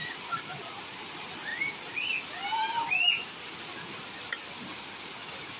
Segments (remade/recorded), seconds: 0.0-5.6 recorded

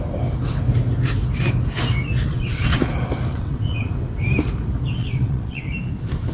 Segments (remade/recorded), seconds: 0.0-2.3 recorded; 2.3-2.8 remade; 2.8-3.3 recorded; 3.3-3.9 remade; 3.9-5.0 recorded; 5.0-5.7 remade; 5.7-6.3 recorded